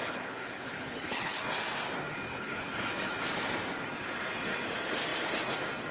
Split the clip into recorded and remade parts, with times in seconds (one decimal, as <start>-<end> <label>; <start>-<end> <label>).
0.0-1.4 remade; 1.4-2.3 recorded; 2.3-2.9 remade; 2.9-5.9 recorded